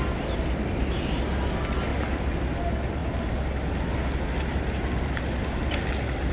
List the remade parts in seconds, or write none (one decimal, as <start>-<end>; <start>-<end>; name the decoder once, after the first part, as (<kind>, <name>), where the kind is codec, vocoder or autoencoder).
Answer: none